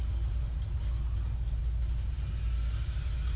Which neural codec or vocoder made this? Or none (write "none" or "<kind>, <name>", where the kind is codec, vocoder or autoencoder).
none